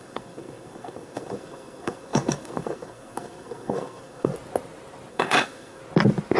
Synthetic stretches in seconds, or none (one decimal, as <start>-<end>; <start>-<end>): 0.0-4.3; 5.1-5.8